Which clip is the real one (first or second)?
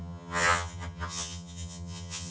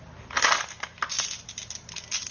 second